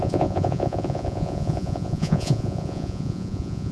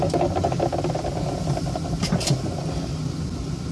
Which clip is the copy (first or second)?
first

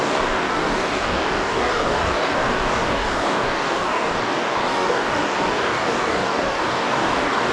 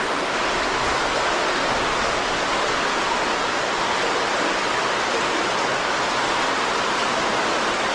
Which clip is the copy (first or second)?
first